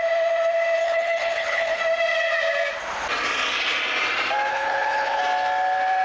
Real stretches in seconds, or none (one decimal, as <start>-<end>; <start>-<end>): 0.0-0.8; 1.8-4.5; 5.2-6.0